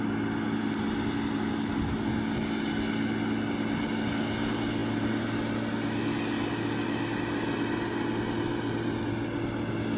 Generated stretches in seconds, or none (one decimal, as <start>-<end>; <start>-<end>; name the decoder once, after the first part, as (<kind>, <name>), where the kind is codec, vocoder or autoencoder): none